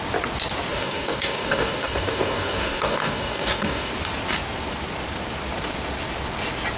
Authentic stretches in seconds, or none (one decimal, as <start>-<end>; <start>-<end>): 0.0-0.7; 3.9-6.8